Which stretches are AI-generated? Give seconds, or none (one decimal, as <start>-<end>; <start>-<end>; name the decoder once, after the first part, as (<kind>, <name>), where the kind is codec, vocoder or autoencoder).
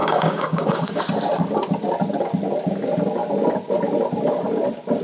0.0-1.0 (codec, DAC)